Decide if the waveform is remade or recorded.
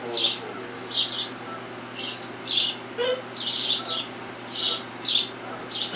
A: recorded